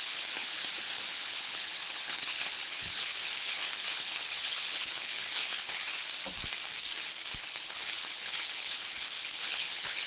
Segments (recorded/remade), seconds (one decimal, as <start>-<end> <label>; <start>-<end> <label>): 0.0-0.6 remade; 0.6-1.1 recorded; 1.1-5.8 remade; 5.8-7.4 recorded; 7.4-10.1 remade